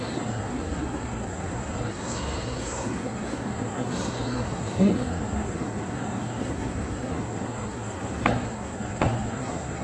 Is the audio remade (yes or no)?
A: yes